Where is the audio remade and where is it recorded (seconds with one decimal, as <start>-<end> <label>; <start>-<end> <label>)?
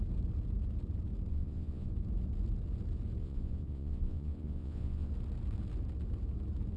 0.0-1.3 recorded; 1.3-1.9 remade; 1.9-3.2 recorded; 3.2-5.1 remade; 5.1-6.8 recorded